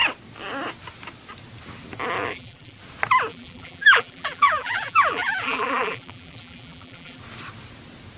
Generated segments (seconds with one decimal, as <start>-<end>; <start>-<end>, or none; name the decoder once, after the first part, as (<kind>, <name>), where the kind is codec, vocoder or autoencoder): 2.3-2.8 (vocoder, BigVGAN v2); 3.3-7.2